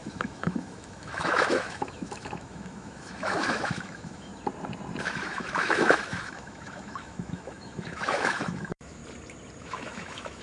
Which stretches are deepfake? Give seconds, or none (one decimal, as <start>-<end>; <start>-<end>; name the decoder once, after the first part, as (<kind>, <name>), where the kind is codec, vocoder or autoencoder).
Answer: 0.0-4.3 (autoencoder, DAC-VAE); 5.0-9.0; 9.6-10.4